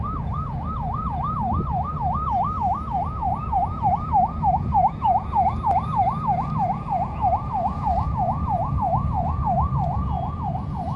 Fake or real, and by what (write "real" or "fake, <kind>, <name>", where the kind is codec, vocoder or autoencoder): fake, vocoder, Vocos